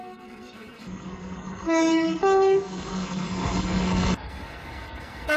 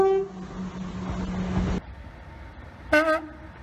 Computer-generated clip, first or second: first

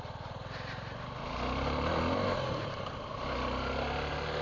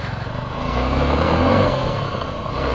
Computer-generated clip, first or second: second